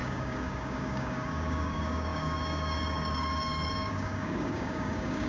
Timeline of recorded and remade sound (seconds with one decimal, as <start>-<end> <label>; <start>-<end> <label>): 0.0-5.3 remade

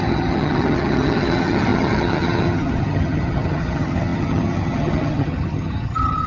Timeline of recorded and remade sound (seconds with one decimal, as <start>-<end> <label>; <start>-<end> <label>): 0.0-6.3 remade

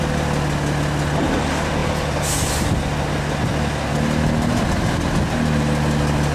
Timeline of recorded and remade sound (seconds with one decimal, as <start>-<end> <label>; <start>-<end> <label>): 0.0-6.3 recorded

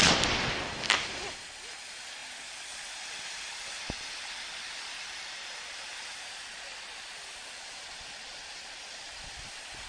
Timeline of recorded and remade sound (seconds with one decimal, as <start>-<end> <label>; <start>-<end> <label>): 0.0-9.9 recorded

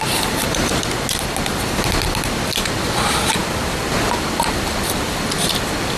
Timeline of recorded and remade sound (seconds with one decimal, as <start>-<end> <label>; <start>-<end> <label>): 0.0-3.4 recorded; 3.4-3.9 remade; 3.9-6.0 recorded

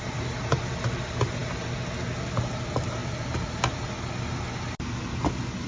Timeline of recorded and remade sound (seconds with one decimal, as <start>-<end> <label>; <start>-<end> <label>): 0.0-5.7 recorded